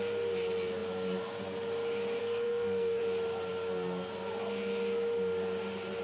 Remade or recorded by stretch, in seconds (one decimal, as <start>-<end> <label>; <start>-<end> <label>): 0.0-2.2 recorded; 2.2-3.0 remade; 3.0-6.0 recorded